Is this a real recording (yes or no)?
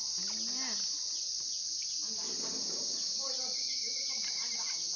yes